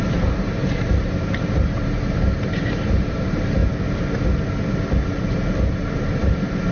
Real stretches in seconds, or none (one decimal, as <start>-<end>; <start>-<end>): 3.6-5.9